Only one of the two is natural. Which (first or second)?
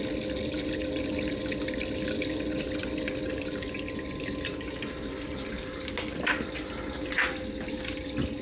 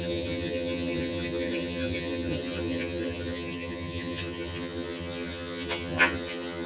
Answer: first